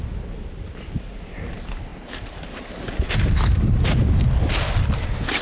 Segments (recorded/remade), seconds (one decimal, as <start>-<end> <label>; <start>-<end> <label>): 0.0-5.4 recorded